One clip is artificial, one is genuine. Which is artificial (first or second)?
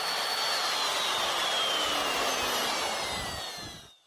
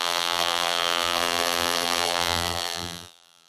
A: second